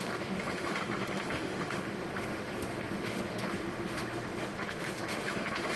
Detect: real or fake fake